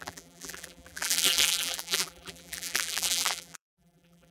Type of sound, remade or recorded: remade